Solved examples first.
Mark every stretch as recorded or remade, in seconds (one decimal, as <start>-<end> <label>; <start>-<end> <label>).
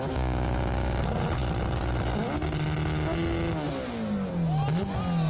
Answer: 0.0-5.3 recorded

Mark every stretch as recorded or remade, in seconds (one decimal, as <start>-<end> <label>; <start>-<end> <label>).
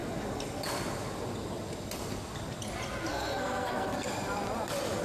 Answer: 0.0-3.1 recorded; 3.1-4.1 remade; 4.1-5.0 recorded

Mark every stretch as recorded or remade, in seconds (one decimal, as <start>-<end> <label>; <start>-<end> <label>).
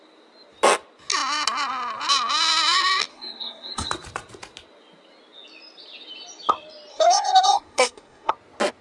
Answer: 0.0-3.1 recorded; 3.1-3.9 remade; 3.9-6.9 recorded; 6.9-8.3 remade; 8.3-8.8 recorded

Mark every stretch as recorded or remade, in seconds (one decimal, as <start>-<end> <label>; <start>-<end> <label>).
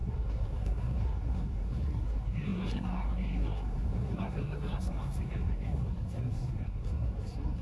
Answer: 0.0-7.6 remade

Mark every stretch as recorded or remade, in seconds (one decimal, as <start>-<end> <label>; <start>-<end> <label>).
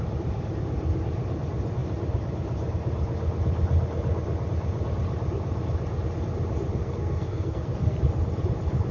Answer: 0.0-6.7 recorded; 6.7-8.0 remade; 8.0-8.9 recorded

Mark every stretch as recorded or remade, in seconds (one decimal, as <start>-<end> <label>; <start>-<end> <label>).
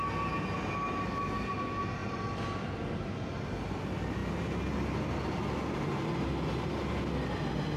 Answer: 0.0-7.8 recorded